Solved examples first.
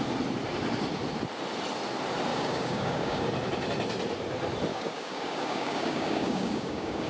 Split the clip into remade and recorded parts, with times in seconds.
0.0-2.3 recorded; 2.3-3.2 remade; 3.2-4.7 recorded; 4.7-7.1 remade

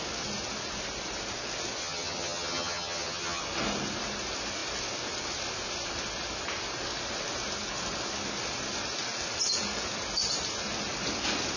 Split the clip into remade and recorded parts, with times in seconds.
0.0-1.8 recorded; 1.8-3.4 remade; 3.4-11.6 recorded

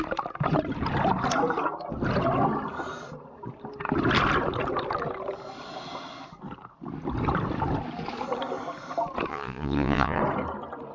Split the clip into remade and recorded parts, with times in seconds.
0.0-9.3 recorded; 9.3-10.2 remade; 10.2-10.9 recorded

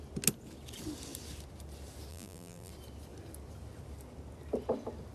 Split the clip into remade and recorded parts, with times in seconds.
0.0-2.1 recorded; 2.1-2.7 remade; 2.7-5.1 recorded

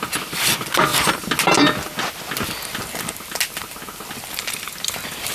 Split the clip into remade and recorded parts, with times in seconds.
0.0-5.3 recorded

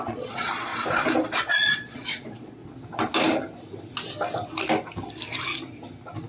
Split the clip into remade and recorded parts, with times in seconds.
0.0-0.7 remade; 0.7-1.4 recorded; 1.4-2.6 remade; 2.6-6.3 recorded

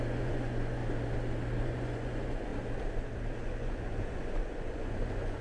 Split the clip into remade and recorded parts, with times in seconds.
0.0-0.8 remade; 0.8-1.6 recorded; 1.6-2.5 remade; 2.5-3.4 recorded; 3.4-5.4 remade